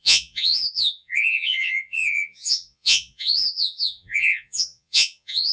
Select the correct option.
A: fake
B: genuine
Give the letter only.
A